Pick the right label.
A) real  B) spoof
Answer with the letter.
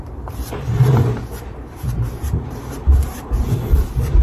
B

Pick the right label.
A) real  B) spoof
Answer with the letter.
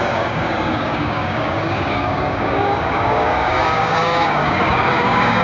B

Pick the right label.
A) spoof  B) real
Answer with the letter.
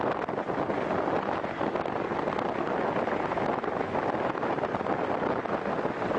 B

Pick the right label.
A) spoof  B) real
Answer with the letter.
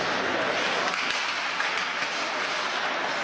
B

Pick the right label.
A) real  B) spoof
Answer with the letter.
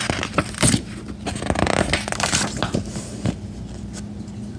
A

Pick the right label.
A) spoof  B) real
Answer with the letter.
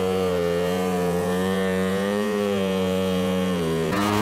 A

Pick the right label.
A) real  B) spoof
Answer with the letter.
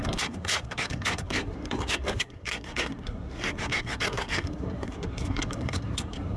B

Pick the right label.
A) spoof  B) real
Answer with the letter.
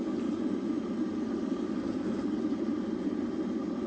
B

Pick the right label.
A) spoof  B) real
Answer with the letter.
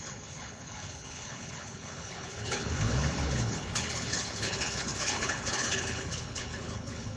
A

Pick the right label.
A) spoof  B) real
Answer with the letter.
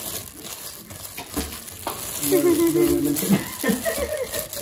B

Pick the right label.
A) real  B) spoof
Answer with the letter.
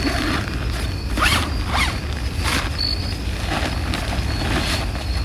A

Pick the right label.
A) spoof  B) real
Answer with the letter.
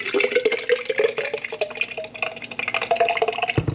B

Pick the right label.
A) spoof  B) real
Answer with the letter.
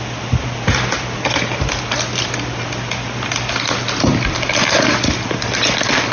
B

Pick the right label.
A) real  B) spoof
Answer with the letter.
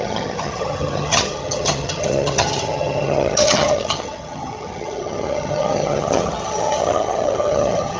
B